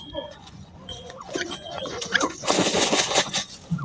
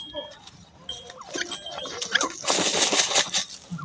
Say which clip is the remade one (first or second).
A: first